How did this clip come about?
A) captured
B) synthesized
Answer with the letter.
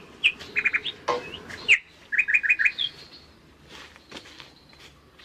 A